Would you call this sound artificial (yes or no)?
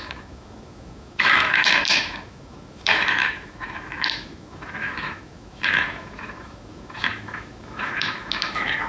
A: yes